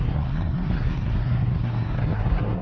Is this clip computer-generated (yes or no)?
yes